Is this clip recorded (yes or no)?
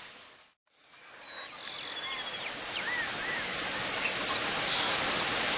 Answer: yes